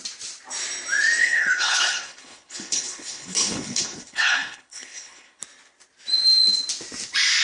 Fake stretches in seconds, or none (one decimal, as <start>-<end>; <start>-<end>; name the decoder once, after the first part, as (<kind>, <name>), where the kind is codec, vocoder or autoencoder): 1.2-5.4 (codec, HILCodec)